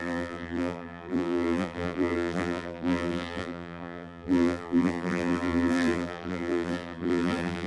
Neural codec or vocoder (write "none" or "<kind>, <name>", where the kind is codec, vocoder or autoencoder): vocoder, BigVGAN v2